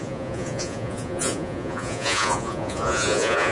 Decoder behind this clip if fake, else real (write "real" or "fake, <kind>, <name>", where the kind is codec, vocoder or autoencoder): fake, vocoder, Vocos